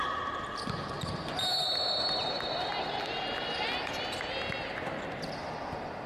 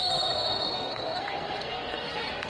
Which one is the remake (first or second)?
second